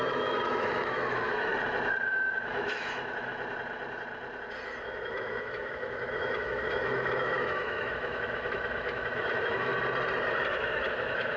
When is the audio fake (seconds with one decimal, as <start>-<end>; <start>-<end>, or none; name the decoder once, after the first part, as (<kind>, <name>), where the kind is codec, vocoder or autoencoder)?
0.0-1.5 (autoencoder, DAC-VAE); 2.1-3.3; 4.8-9.7; 10.5-11.4

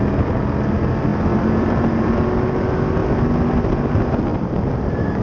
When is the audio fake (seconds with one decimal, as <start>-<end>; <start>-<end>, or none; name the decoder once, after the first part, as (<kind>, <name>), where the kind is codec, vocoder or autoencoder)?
1.1-2.2 (vocoder, BigVGAN v2); 4.3-5.2